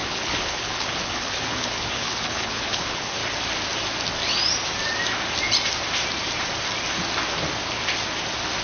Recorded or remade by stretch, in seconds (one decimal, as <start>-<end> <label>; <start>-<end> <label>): 0.0-3.2 remade; 3.2-8.6 recorded